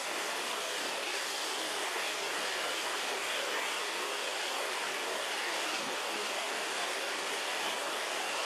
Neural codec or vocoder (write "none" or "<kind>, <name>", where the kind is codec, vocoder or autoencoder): codec, DAC